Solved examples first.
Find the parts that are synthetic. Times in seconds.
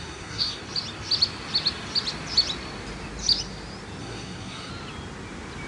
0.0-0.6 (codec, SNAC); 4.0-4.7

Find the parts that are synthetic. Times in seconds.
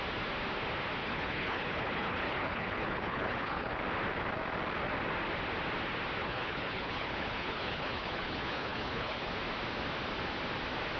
1.0-3.8 (codec, HILCodec); 6.2-9.3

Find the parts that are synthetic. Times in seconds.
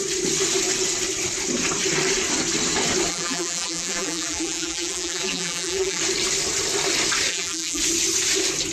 3.1-6.0 (vocoder, BigVGAN v2); 7.3-7.8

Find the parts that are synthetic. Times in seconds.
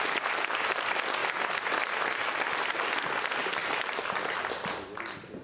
none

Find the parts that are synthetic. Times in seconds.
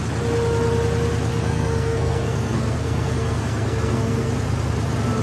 1.3-4.3 (codec, SNAC)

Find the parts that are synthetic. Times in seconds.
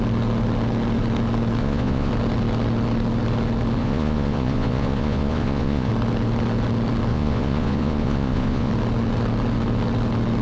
1.6-2.1 (vocoder, Vocos); 3.8-5.9; 7.1-8.7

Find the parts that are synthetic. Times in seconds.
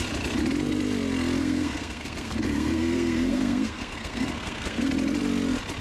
1.4-4.9 (codec, SNAC)